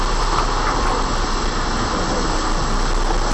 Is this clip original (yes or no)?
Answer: yes